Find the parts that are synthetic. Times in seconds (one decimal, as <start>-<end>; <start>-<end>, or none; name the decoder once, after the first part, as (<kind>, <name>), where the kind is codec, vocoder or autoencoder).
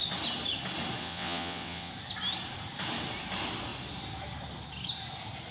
1.0-1.9 (vocoder, WaveNeXt)